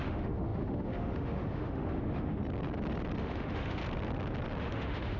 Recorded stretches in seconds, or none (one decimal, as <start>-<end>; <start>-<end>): 2.4-3.2; 3.8-4.6